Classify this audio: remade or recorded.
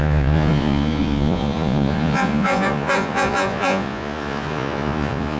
remade